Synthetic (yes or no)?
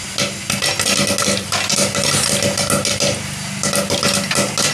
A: no